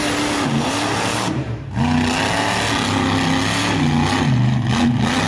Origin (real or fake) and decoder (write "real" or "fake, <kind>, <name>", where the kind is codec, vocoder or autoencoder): real